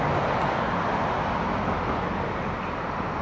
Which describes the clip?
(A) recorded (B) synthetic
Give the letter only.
A